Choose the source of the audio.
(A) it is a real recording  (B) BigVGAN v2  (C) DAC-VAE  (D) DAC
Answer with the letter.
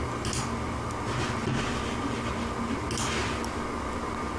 A